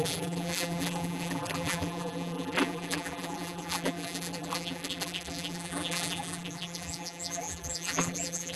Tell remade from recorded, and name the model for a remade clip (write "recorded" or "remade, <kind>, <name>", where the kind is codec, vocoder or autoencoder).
remade, vocoder, BigVGAN v2